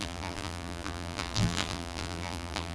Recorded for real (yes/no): no